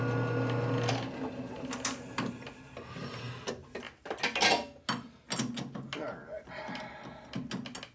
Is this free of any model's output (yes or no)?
yes